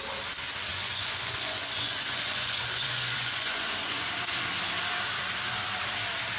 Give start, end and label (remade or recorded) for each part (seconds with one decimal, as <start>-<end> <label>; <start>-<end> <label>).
0.0-0.7 recorded; 0.7-4.1 remade; 4.1-6.4 recorded